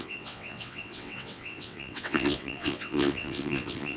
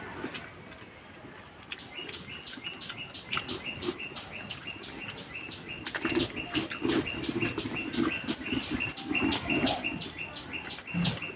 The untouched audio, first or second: second